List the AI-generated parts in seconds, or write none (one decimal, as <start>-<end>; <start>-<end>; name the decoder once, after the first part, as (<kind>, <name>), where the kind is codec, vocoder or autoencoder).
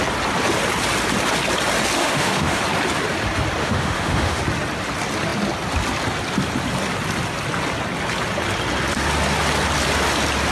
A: 2.0-2.6 (autoencoder, DAC-VAE); 3.6-4.4